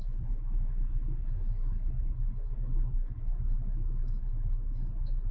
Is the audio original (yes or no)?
yes